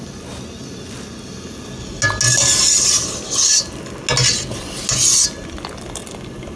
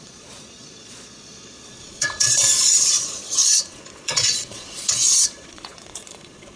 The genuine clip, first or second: first